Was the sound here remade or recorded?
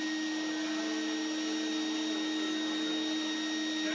recorded